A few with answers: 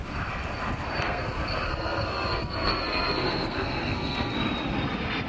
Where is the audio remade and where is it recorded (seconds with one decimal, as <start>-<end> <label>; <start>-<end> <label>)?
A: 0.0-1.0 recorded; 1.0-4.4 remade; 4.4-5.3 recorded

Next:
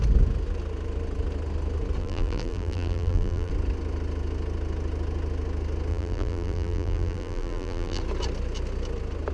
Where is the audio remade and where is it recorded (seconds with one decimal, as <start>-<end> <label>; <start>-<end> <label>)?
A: 0.0-2.0 recorded; 2.0-3.5 remade; 3.5-5.9 recorded; 5.9-8.0 remade; 8.0-9.3 recorded

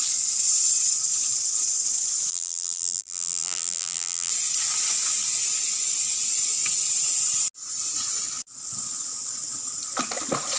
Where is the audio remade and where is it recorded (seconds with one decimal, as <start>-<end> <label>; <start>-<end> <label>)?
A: 0.0-2.3 recorded; 2.3-4.3 remade; 4.3-10.6 recorded

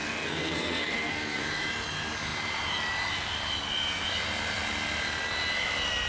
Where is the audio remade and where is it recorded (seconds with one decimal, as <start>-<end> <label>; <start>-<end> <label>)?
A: 0.0-1.4 remade; 1.4-6.1 recorded

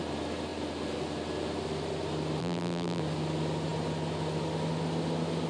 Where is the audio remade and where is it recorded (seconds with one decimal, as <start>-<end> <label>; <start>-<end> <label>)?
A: 0.0-2.4 recorded; 2.4-3.0 remade; 3.0-5.5 recorded

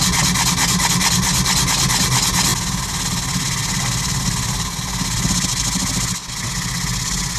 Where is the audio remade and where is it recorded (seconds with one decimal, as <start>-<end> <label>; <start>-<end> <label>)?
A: 0.0-7.4 recorded

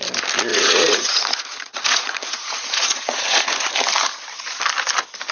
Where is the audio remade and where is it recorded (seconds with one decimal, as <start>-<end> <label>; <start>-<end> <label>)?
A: 0.0-0.5 recorded; 0.5-3.7 remade; 3.7-5.3 recorded